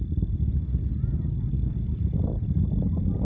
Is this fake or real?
real